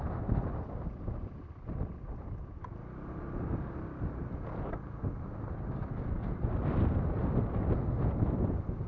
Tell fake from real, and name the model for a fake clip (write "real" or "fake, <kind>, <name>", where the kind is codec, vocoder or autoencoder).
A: real